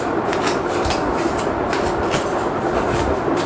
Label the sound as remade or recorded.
recorded